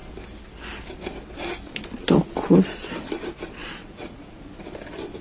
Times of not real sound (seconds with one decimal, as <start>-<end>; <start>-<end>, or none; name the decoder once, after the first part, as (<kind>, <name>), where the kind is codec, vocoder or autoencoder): 3.6-4.4 (vocoder, Vocos)